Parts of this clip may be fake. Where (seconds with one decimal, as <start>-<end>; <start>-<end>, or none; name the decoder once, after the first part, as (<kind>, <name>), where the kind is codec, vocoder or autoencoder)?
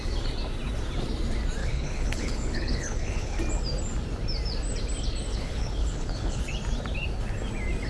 1.6-3.4 (codec, HILCodec); 5.3-6.4